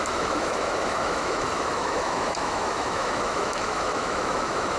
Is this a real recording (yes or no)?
no